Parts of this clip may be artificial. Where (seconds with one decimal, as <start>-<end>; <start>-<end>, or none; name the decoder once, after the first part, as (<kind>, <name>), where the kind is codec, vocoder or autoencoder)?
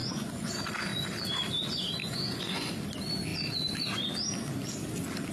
0.0-0.5 (vocoder, Vocos); 2.0-2.7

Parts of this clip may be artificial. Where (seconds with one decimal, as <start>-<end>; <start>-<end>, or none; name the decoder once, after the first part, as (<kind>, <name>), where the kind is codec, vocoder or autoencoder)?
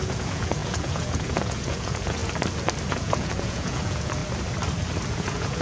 0.0-2.2 (vocoder, Vocos); 2.9-4.2; 5.1-5.6